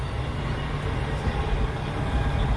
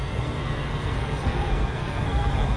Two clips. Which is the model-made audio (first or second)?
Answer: second